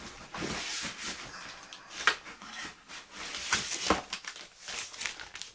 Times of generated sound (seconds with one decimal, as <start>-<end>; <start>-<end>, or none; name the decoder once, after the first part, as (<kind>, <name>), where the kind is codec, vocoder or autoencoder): 2.3-2.9 (codec, SNAC)